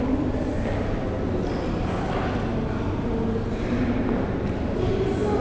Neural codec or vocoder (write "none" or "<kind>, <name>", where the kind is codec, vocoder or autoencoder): none